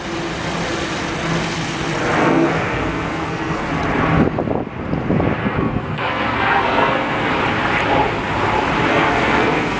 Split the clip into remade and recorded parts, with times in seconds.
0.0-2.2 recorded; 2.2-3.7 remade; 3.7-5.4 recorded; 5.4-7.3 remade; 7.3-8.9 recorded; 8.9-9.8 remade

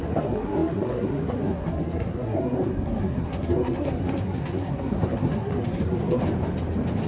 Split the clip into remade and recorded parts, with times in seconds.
0.0-6.2 remade; 6.2-7.1 recorded

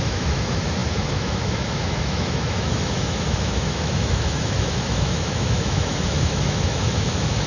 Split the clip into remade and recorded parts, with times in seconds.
0.0-7.5 remade

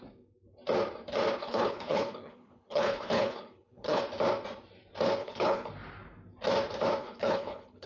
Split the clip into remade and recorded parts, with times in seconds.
0.0-1.4 recorded; 1.4-4.0 remade; 4.0-5.2 recorded; 5.2-5.7 remade; 5.7-7.0 recorded; 7.0-7.9 remade

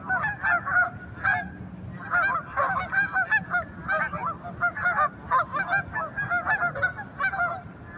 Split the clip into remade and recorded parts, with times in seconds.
0.0-8.0 recorded

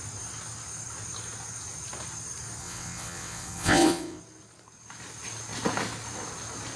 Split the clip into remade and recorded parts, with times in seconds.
0.0-2.6 recorded; 2.6-4.2 remade; 4.2-6.8 recorded

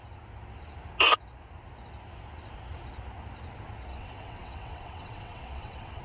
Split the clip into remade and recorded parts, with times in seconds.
0.0-3.9 recorded; 3.9-6.0 remade

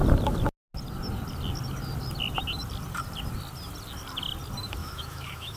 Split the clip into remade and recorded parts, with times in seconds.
0.0-4.8 recorded; 4.8-5.6 remade